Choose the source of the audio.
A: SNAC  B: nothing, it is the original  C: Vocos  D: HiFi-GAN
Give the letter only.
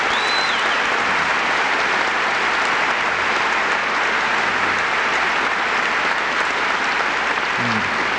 B